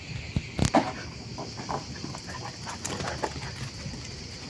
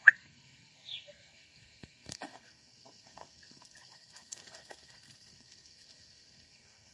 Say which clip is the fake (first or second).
second